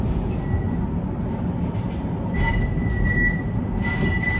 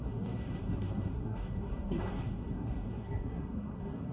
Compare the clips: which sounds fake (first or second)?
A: second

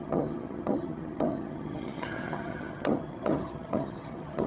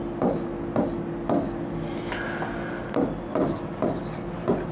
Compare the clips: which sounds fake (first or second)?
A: first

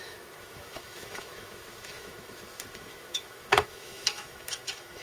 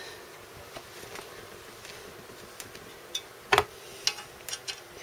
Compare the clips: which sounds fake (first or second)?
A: first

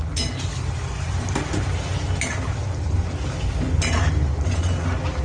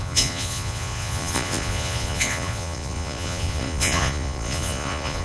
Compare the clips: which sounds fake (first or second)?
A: second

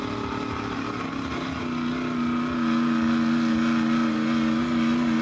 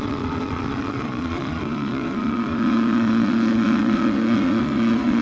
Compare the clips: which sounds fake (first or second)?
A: second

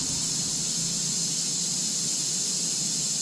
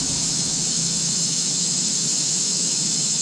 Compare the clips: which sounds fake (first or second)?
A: second